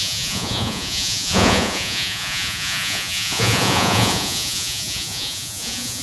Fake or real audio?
fake